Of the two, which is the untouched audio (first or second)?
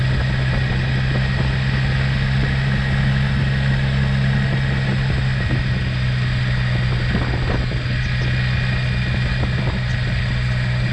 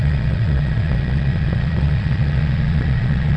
first